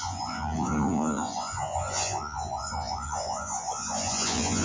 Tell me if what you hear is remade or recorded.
remade